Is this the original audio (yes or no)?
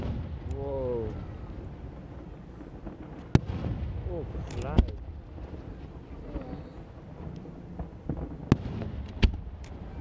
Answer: yes